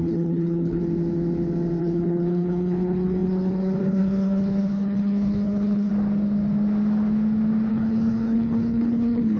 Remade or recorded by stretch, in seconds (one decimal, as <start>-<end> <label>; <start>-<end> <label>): 0.0-0.8 remade; 0.8-1.8 recorded; 1.8-5.9 remade; 5.9-7.7 recorded; 7.7-9.4 remade